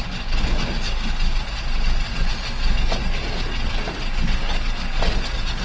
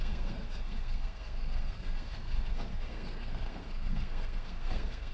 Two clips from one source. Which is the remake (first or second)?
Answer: second